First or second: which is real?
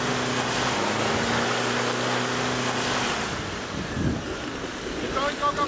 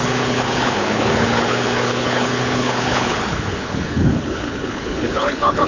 first